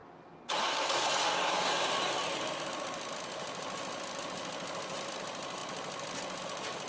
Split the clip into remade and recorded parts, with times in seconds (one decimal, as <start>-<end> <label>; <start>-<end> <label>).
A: 0.0-1.3 recorded; 1.3-1.9 remade; 1.9-6.9 recorded